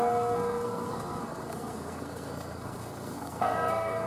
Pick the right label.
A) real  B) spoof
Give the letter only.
B